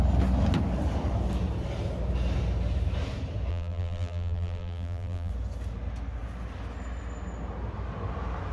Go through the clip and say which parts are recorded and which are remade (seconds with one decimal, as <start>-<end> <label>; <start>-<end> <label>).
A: 0.0-3.5 recorded; 3.5-5.3 remade; 5.3-8.5 recorded